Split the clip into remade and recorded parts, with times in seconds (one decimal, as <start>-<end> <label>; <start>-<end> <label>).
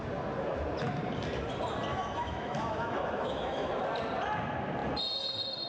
0.0-1.9 recorded; 1.9-3.7 remade; 3.7-5.7 recorded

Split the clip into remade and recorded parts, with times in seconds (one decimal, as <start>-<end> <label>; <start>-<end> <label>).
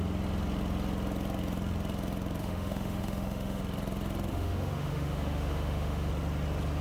0.0-2.4 recorded; 2.4-3.6 remade; 3.6-4.3 recorded; 4.3-6.1 remade; 6.1-6.8 recorded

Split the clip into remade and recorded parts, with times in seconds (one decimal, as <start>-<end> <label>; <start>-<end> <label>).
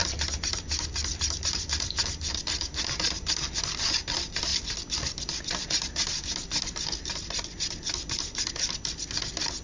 0.0-9.6 recorded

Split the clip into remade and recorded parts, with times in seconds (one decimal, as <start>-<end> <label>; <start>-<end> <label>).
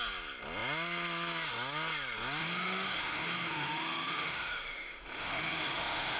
0.0-2.4 recorded; 2.4-6.2 remade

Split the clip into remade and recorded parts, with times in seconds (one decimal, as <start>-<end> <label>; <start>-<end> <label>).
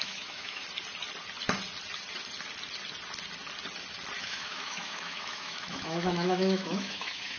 0.0-0.6 remade; 0.6-4.2 recorded; 4.2-7.4 remade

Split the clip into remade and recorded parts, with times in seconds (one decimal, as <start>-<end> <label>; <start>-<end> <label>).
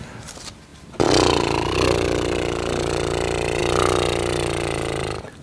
0.0-5.4 recorded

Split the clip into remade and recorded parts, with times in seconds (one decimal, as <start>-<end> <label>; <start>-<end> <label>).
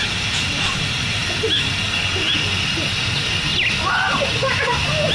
0.0-5.1 recorded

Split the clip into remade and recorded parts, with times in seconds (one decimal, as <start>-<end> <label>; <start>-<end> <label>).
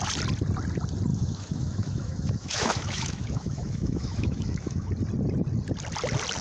0.0-1.1 recorded; 1.1-4.9 remade; 4.9-6.4 recorded